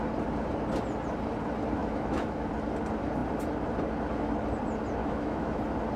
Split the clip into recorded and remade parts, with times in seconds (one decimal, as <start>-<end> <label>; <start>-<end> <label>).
0.0-1.8 recorded; 1.8-2.5 remade; 2.5-5.0 recorded; 5.0-5.6 remade; 5.6-6.0 recorded